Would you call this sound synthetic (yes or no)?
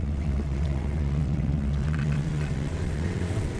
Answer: yes